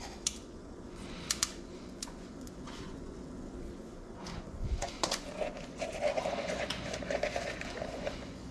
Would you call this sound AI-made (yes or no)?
yes